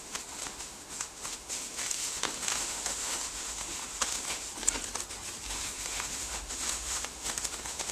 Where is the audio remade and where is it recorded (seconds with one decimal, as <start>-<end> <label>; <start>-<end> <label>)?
0.0-4.5 remade; 4.5-5.5 recorded; 5.5-7.9 remade